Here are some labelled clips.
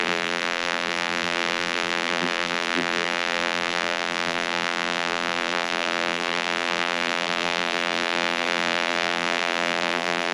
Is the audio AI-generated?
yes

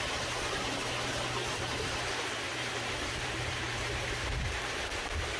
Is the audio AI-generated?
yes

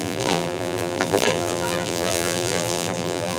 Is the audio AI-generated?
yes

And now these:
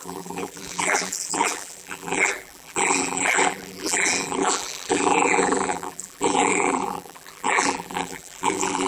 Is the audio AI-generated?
yes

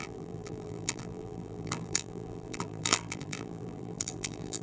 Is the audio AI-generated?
yes